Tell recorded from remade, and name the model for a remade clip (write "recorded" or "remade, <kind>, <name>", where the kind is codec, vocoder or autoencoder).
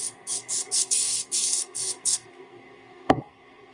remade, codec, SNAC